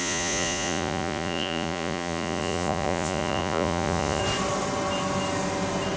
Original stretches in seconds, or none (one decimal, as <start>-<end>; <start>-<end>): 4.2-6.0